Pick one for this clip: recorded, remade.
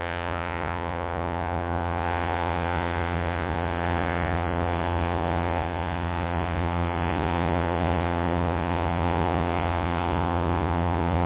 remade